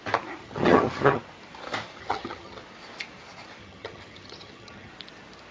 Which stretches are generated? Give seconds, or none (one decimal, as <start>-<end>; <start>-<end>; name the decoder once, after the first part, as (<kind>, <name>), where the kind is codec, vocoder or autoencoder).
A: 0.4-1.2 (vocoder, HiFi-GAN); 2.0-2.6; 3.6-4.9